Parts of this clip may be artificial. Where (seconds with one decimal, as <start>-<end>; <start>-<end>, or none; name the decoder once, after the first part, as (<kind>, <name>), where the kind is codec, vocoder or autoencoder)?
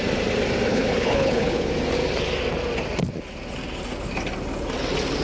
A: 0.7-1.7 (codec, HILCodec)